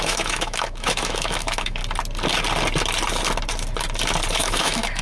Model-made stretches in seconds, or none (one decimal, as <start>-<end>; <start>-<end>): 0.0-1.8; 4.3-5.0

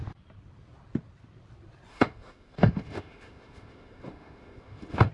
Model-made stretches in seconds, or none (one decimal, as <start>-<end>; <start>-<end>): 1.9-5.1

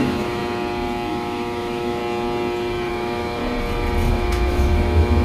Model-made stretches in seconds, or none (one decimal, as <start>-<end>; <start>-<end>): 0.0-0.4; 1.1-2.0; 2.9-3.4; 4.1-5.2